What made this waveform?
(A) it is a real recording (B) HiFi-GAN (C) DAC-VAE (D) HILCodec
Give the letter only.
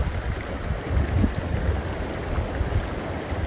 A